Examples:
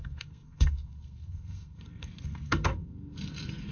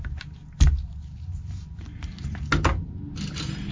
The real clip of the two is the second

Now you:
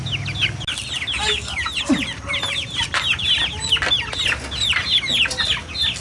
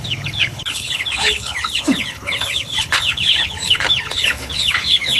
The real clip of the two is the first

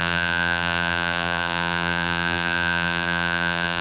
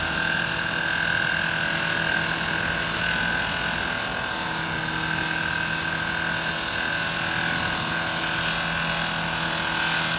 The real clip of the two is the second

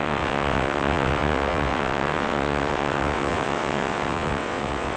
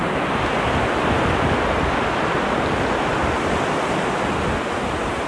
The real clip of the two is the second